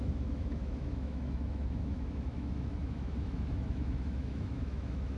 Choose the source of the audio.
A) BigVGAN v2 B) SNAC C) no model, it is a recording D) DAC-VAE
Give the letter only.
D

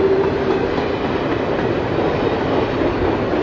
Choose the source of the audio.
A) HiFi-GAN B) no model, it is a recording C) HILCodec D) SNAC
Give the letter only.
B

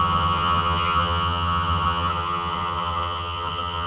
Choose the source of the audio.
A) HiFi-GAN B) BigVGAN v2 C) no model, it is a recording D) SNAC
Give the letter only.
A